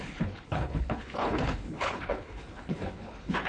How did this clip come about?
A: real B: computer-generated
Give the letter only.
B